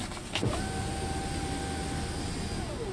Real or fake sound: real